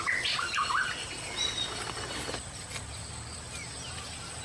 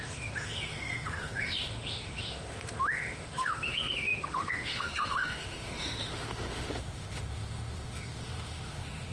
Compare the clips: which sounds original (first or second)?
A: first